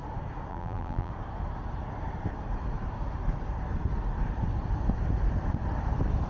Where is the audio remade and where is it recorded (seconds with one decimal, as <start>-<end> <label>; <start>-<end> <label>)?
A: 0.0-0.5 recorded; 0.5-1.1 remade; 1.1-6.3 recorded

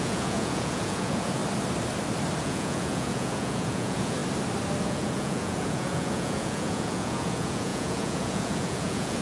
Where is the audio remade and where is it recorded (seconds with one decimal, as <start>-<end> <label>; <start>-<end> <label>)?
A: 0.0-1.4 remade; 1.4-2.4 recorded; 2.4-4.2 remade; 4.2-4.8 recorded; 4.8-9.2 remade

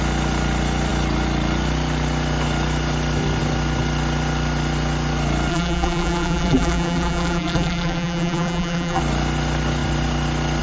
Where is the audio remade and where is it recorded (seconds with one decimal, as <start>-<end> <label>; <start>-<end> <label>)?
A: 0.0-5.5 recorded; 5.5-9.0 remade; 9.0-10.6 recorded

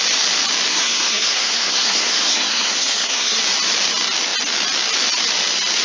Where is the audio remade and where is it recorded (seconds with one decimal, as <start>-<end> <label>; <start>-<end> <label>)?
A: 0.0-0.7 recorded; 0.7-3.4 remade; 3.4-5.8 recorded